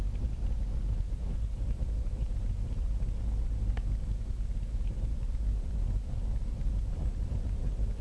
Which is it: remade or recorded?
remade